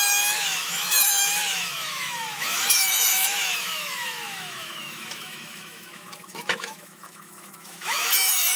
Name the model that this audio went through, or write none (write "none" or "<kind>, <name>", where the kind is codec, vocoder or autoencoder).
autoencoder, DAC-VAE